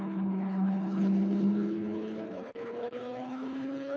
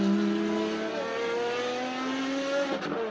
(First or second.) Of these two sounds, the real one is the second